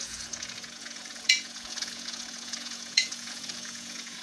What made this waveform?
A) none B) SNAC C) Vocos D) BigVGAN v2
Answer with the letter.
C